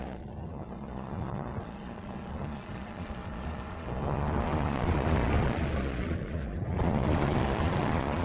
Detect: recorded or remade remade